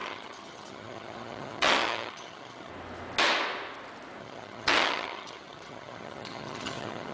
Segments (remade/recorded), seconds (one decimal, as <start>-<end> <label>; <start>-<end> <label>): 0.0-2.7 remade; 2.7-4.2 recorded; 4.2-7.1 remade